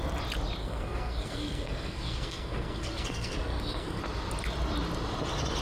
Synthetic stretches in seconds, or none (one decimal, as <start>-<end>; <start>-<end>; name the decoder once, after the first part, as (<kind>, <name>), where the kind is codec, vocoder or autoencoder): 0.6-4.0 (codec, SNAC)